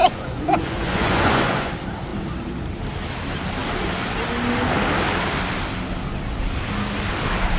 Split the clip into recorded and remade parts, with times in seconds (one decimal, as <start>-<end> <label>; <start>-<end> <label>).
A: 0.0-1.7 remade; 1.7-7.6 recorded